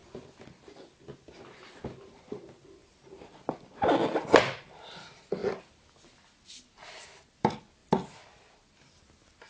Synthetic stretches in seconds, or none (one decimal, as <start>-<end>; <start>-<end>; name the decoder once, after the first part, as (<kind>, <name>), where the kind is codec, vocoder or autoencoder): none